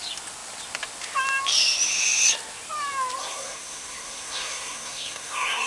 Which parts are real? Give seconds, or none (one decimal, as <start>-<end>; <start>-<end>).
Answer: 0.0-3.2